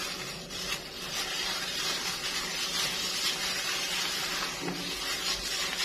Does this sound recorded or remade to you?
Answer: recorded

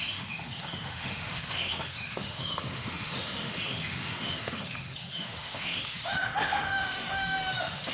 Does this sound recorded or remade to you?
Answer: remade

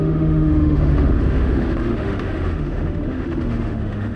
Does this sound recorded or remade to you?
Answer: remade